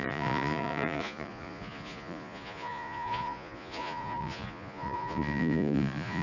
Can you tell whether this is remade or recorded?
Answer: remade